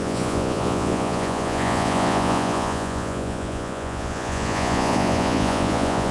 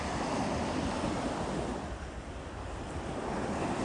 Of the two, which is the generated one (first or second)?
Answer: first